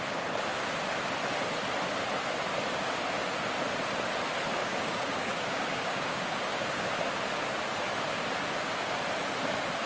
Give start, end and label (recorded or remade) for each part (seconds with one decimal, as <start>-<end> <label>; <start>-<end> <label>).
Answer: 0.0-4.6 recorded; 4.6-6.9 remade; 6.9-9.9 recorded